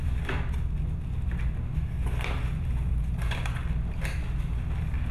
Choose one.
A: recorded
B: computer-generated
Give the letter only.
A